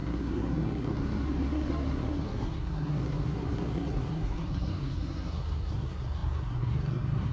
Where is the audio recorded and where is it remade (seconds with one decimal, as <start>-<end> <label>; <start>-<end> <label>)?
0.0-7.3 remade